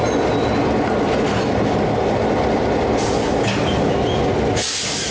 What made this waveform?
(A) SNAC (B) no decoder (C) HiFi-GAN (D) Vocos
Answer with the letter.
B